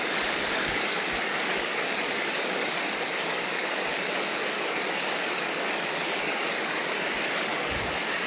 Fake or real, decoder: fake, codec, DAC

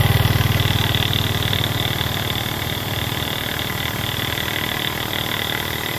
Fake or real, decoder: real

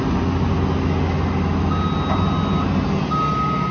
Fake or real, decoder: real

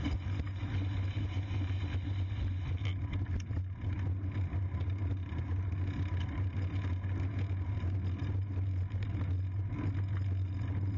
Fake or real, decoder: real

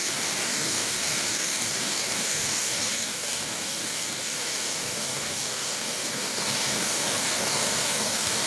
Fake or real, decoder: fake, codec, DAC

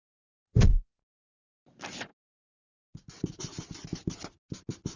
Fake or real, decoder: real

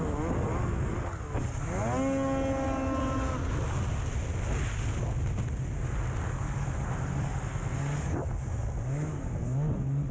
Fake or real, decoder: real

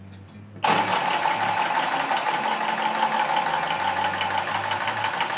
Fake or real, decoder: real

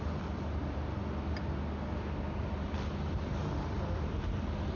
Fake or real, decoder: real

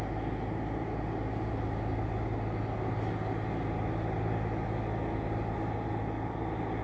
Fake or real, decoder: real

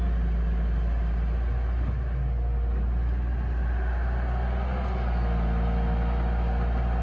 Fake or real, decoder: real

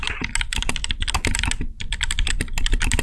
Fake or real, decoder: real